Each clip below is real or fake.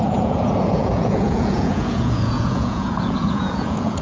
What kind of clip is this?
fake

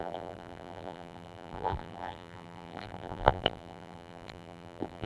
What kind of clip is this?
fake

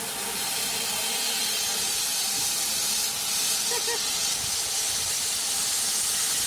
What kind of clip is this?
real